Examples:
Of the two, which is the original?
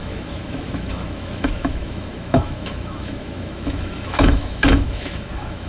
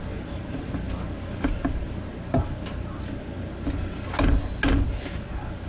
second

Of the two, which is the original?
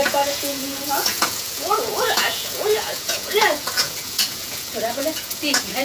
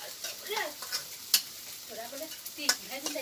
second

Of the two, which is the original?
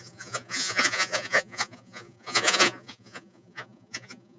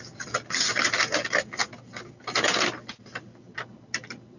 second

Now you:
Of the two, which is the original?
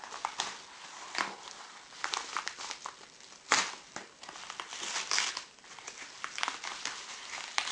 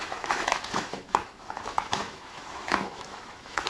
first